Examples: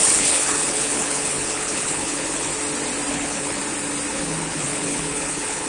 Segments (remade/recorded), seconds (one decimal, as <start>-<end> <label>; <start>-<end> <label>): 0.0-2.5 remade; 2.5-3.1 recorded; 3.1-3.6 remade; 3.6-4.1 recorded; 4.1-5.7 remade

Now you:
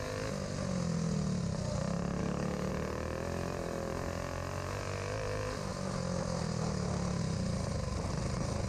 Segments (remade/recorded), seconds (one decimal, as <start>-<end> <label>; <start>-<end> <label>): 0.0-2.2 recorded; 2.2-2.7 remade; 2.7-8.7 recorded

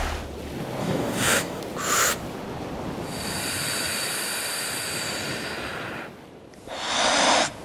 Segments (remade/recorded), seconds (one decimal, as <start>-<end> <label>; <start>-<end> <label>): 0.0-0.8 recorded; 0.8-1.6 remade; 1.6-7.6 recorded

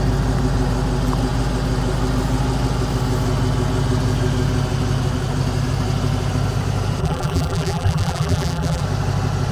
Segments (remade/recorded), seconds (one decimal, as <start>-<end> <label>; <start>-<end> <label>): 0.0-7.0 recorded; 7.0-8.8 remade; 8.8-9.5 recorded